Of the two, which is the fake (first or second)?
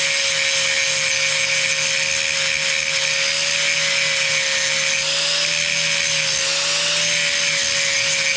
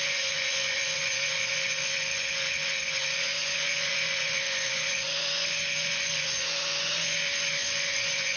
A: second